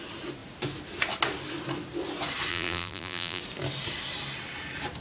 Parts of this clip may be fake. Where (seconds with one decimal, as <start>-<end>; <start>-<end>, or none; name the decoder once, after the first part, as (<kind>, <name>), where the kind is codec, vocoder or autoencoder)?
2.5-3.4 (vocoder, BigVGAN v2)